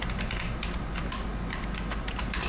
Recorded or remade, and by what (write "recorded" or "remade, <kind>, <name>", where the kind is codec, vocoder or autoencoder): remade, vocoder, BigVGAN v2